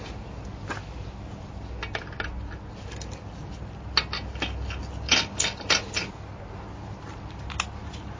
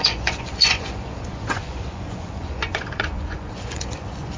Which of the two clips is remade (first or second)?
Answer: second